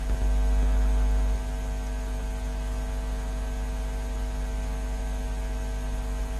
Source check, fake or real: real